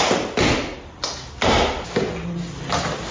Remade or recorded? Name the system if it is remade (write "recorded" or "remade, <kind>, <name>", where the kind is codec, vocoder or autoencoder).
recorded